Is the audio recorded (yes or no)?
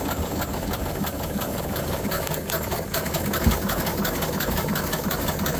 no